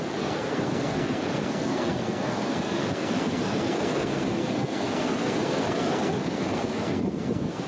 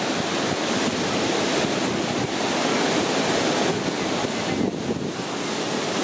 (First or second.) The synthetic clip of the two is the first